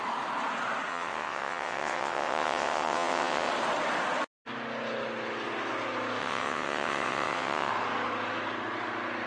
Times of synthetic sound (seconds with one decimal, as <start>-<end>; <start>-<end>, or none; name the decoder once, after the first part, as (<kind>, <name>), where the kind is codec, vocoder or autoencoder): 0.9-3.5 (vocoder, WaveNeXt); 6.2-7.7